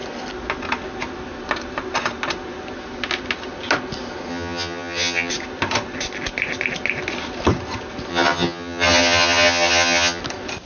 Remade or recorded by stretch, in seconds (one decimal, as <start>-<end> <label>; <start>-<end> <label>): 0.0-4.3 recorded; 4.3-5.3 remade; 5.3-8.1 recorded; 8.1-10.2 remade; 10.2-10.7 recorded